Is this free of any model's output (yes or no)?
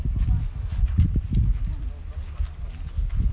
yes